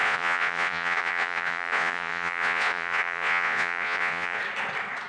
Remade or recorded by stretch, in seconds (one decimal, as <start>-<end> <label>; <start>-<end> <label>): 0.0-4.4 remade; 4.4-5.1 recorded